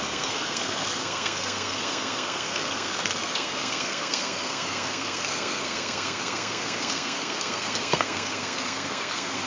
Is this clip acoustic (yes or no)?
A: no